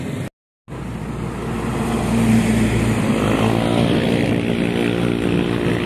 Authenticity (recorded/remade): recorded